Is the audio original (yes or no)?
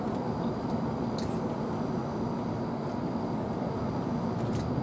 yes